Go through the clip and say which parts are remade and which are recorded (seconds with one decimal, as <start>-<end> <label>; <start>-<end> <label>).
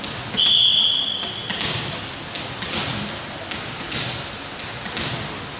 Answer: 0.0-5.6 recorded